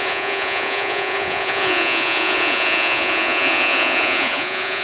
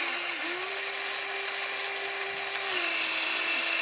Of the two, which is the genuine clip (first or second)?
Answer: second